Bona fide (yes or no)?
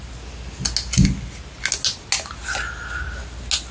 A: yes